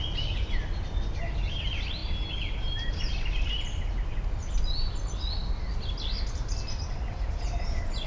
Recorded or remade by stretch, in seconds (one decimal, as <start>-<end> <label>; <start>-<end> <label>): 0.0-8.1 recorded